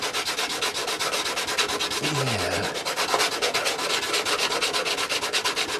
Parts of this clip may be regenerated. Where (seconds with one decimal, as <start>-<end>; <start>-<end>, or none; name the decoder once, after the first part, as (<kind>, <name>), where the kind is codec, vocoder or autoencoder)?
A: none